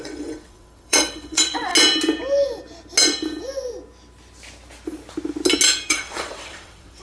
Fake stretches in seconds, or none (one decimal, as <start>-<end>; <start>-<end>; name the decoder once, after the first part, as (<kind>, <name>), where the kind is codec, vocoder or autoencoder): 0.0-1.7 (vocoder, WaveNeXt); 5.9-7.0